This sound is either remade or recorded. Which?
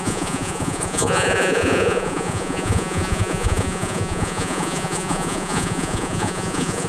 remade